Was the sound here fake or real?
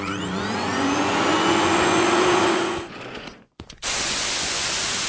fake